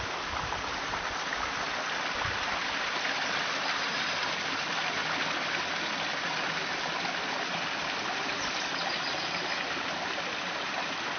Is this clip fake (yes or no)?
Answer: yes